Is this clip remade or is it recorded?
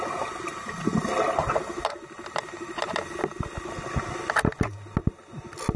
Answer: recorded